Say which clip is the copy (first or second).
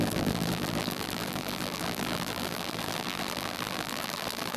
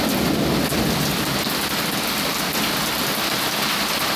first